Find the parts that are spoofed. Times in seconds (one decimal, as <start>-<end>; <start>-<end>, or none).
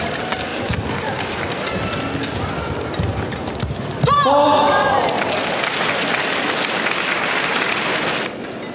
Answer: none